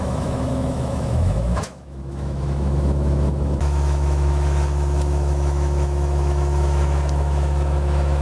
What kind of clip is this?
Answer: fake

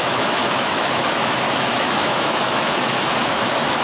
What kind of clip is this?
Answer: fake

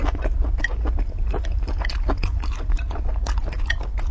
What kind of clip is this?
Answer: real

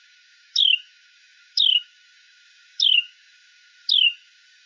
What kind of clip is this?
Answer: fake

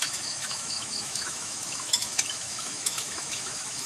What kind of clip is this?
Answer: fake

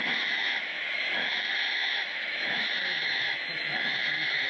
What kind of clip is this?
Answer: fake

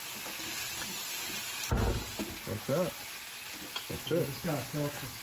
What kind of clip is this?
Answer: real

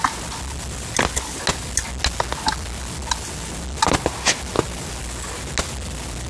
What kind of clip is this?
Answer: real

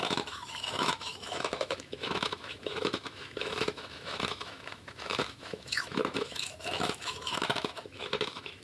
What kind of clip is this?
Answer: fake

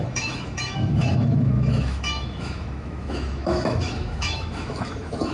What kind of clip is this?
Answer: fake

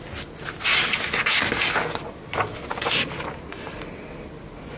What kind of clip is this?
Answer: real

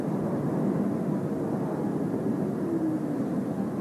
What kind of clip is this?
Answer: real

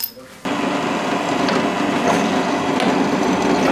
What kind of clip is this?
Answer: real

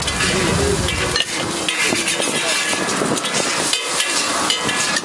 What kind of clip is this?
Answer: real